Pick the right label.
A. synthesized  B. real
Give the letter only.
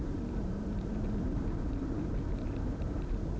A